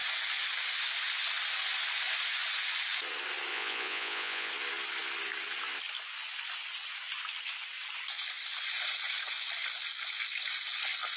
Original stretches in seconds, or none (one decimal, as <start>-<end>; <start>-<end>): 0.0-3.5; 4.5-11.2